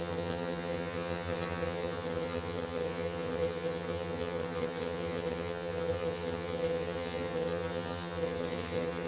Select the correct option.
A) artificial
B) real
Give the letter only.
A